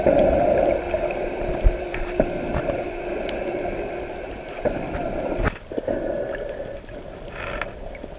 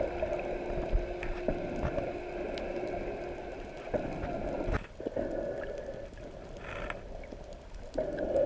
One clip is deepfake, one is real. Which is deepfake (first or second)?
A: first